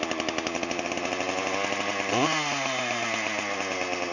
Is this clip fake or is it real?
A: real